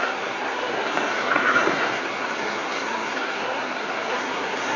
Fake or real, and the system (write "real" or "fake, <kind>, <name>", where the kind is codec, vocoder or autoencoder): fake, codec, SNAC